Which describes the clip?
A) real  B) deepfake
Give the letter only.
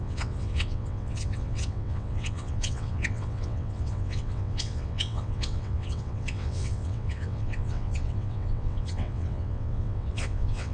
B